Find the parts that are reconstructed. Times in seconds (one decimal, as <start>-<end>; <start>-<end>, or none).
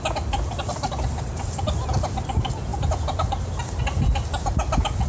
none